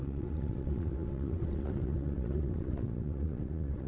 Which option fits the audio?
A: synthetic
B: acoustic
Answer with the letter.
A